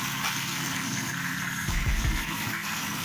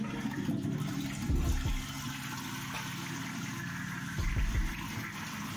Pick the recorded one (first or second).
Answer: second